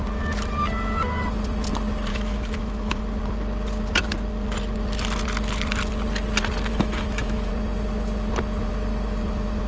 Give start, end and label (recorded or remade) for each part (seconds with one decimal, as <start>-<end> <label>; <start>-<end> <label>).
0.0-2.1 recorded; 2.1-3.0 remade; 3.0-6.7 recorded; 6.7-7.5 remade; 7.5-9.7 recorded